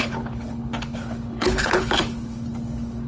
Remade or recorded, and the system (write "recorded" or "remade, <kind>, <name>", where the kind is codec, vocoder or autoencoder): remade, codec, HILCodec